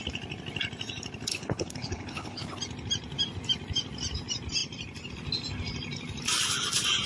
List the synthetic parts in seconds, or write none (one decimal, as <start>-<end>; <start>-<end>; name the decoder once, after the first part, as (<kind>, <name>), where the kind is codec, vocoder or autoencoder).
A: 1.3-2.6 (codec, HILCodec)